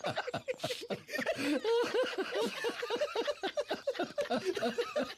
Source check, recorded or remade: remade